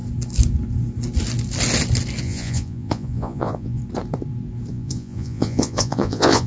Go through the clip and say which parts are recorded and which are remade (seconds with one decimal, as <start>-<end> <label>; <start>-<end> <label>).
0.0-2.2 recorded; 2.2-3.8 remade; 3.8-4.7 recorded; 4.7-6.5 remade